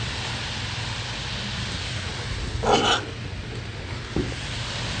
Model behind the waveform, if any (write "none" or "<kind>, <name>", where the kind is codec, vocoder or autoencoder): none